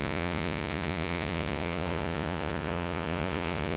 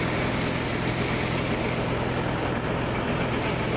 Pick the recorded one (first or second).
second